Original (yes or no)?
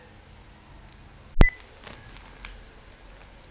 yes